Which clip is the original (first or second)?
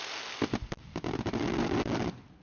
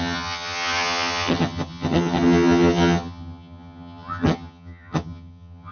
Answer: first